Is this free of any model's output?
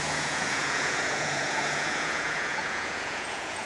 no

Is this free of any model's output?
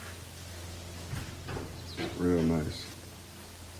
yes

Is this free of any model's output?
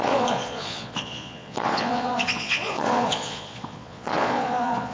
no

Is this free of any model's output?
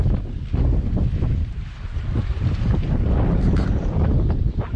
yes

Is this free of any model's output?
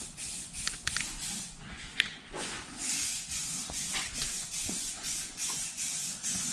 no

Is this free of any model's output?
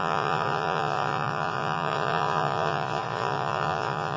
no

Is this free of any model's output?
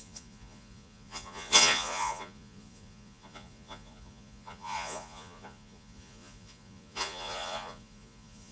no